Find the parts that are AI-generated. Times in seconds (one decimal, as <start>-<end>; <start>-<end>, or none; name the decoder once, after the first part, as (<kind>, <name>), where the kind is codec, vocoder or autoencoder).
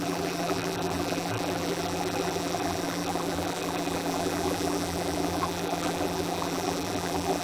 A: 0.0-7.4 (vocoder, BigVGAN v2)